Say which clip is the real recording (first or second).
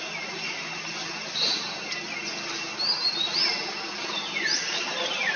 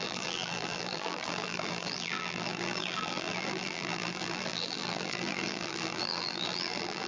first